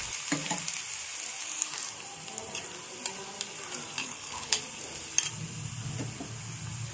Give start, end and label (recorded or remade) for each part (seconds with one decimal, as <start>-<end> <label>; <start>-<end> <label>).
0.0-4.0 recorded; 4.0-4.6 remade; 4.6-6.9 recorded